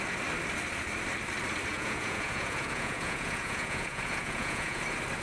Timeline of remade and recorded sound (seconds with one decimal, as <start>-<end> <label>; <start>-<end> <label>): 0.0-1.7 recorded; 1.7-4.8 remade; 4.8-5.2 recorded